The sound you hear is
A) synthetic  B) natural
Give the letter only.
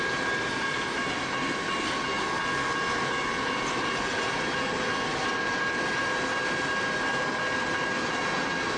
B